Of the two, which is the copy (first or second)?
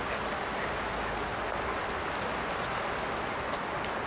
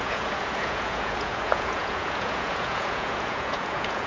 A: second